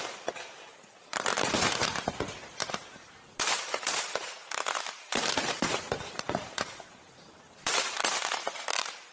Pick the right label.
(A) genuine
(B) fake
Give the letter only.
B